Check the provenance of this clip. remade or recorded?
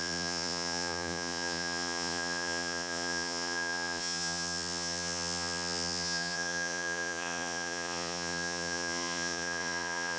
remade